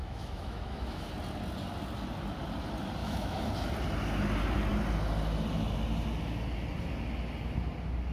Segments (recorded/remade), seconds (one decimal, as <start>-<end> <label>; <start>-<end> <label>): 0.0-1.1 remade; 1.1-3.0 recorded; 3.0-3.5 remade; 3.5-8.1 recorded